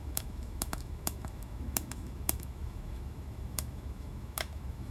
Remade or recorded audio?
remade